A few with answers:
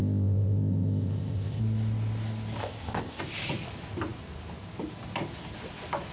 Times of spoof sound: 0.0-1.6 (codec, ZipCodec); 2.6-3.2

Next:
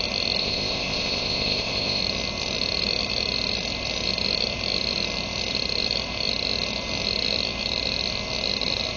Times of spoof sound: 0.4-2.0 (codec, ZipCodec)

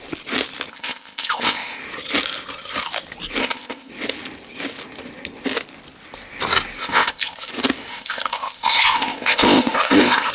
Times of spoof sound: 0.7-1.8 (codec, ZipCodec); 3.4-3.9; 6.8-7.5; 7.9-10.3

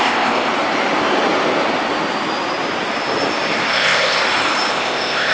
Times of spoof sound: 0.0-0.5 (codec, ZipCodec); 3.7-4.2; 4.7-5.3

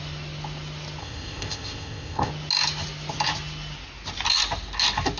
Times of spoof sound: 1.0-2.3 (codec, ZipCodec)

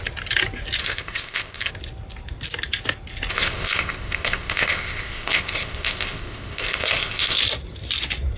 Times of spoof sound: 0.8-1.7 (codec, ZipCodec); 3.3-7.4

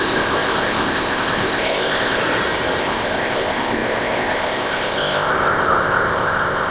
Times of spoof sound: 0.0-2.2 (codec, ZipCodec); 2.8-6.7

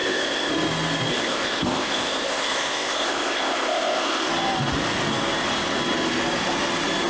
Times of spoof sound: 0.0-0.5 (codec, ZipCodec); 1.1-4.3